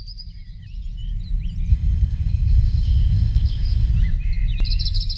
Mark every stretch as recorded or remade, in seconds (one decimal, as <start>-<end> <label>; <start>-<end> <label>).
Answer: 0.0-1.7 recorded; 1.7-3.9 remade; 3.9-5.2 recorded